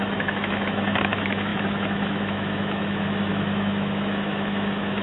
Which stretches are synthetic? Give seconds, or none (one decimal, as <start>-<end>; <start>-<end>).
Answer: 0.0-5.0

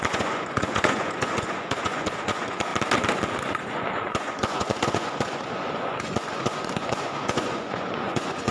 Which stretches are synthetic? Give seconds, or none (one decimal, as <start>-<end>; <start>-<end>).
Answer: 0.0-2.7; 3.4-8.5

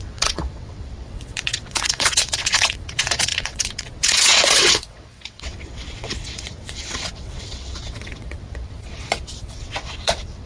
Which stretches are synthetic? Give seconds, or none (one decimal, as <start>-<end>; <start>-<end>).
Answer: 0.0-10.5

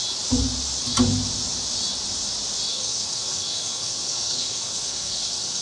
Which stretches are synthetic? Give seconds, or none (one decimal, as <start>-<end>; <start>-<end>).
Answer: 2.7-5.6

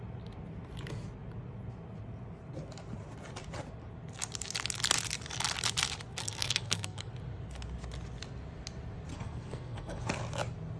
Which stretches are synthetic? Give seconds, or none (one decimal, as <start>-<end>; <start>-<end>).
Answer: 6.2-7.1; 9.1-10.0